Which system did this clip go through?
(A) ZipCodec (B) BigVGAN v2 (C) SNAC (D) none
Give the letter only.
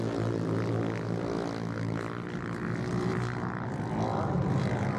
D